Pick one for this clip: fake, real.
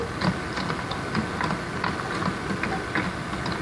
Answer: real